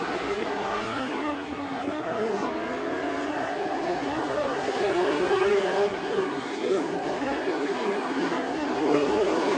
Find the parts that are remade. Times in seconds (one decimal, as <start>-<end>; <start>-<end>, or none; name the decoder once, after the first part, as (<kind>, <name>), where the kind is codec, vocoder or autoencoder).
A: 0.0-2.5 (codec, SNAC); 3.3-9.6